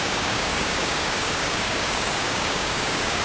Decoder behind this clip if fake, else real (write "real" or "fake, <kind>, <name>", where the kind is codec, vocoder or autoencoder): fake, codec, DAC